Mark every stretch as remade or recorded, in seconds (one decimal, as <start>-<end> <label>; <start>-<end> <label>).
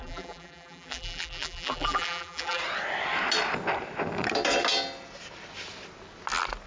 0.0-2.6 remade; 2.6-6.7 recorded